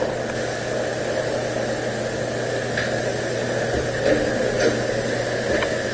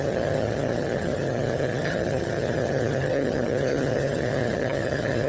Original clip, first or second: first